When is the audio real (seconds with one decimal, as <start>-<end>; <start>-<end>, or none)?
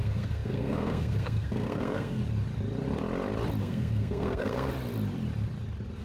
2.2-3.6; 4.7-6.0